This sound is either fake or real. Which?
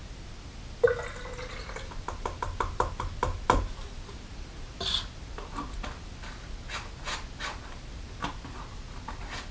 real